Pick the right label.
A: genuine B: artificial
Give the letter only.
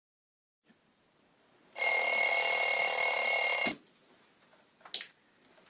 A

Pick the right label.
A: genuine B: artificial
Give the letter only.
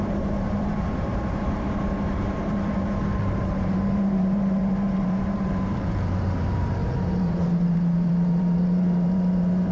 B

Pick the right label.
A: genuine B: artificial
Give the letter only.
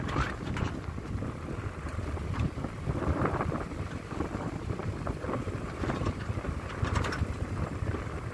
A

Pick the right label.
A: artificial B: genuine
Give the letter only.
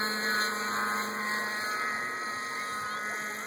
B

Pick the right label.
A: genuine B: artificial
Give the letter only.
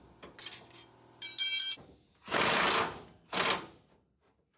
A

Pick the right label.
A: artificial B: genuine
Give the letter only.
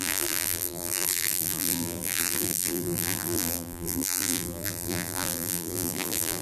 A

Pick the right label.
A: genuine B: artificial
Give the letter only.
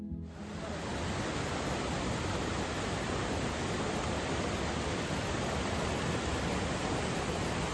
A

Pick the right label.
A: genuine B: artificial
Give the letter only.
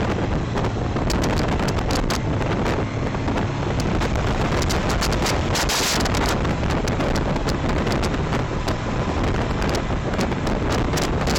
A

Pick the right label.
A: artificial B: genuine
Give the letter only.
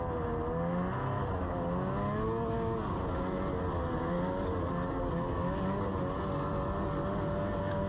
B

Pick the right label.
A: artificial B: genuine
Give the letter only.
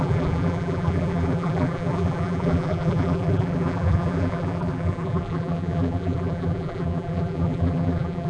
A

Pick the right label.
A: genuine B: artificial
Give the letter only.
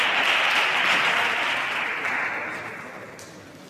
A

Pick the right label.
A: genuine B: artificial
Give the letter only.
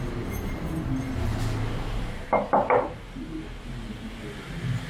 A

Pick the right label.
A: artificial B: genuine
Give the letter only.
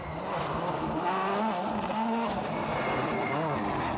B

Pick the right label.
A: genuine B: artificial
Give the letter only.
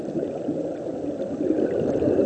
A